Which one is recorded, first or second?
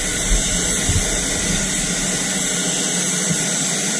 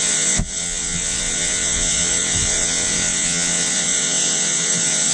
first